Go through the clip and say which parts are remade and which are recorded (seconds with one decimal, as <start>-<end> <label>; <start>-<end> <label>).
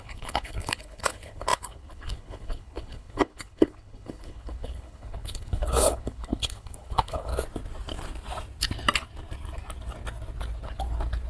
0.0-7.3 remade; 7.3-11.3 recorded